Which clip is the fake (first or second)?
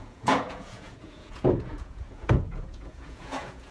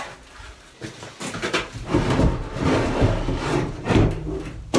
first